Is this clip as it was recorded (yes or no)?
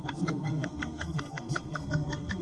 no